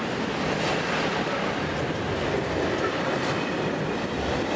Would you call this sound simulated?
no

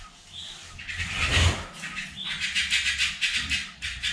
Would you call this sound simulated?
no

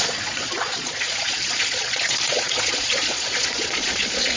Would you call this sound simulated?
yes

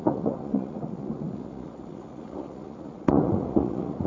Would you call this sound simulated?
yes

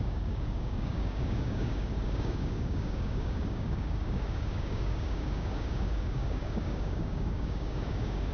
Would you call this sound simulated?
yes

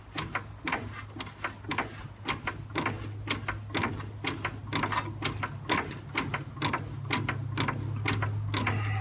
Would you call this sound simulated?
no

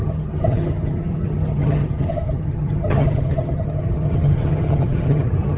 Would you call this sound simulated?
yes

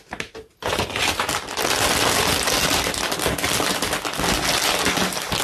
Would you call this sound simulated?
no